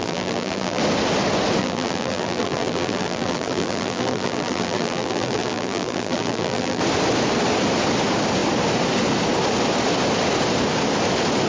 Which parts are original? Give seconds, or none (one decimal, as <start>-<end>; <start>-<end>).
0.8-1.6; 6.8-11.5